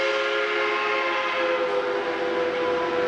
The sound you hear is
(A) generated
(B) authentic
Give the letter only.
B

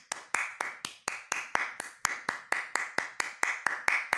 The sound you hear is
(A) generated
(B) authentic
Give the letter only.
B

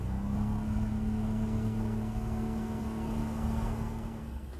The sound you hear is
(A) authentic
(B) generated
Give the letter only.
B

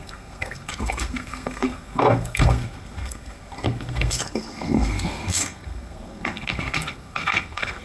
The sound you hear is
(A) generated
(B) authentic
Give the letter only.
A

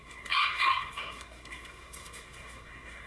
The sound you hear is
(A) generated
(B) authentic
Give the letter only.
A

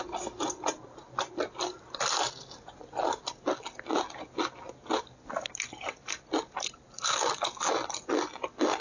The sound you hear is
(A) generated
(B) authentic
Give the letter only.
B